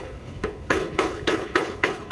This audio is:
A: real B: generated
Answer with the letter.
B